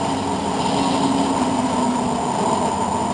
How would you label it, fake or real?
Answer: real